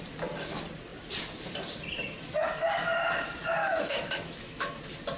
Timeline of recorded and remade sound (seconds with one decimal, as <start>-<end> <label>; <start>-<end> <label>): 0.0-3.6 recorded; 3.6-4.8 remade; 4.8-5.2 recorded